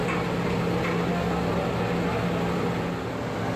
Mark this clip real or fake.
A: real